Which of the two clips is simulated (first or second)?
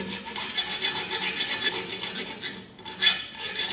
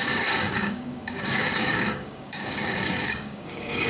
second